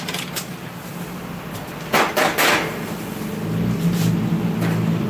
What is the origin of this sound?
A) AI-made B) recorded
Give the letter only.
B